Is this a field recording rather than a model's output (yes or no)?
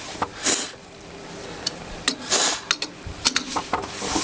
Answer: yes